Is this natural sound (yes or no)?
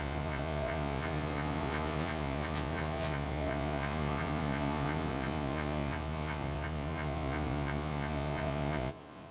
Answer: no